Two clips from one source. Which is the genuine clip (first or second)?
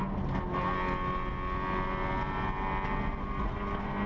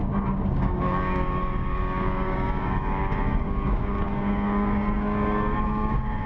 first